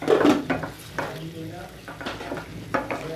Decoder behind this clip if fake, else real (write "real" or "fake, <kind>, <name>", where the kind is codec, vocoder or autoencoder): real